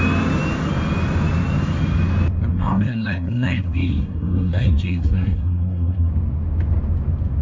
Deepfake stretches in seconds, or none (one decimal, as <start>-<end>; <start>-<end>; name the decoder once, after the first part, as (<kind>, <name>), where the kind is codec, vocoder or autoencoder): 2.5-6.1 (codec, SNAC)